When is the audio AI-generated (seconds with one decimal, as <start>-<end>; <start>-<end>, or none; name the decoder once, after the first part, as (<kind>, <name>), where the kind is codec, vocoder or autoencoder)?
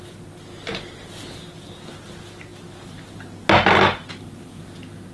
none